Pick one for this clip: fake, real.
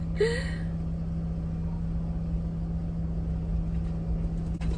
real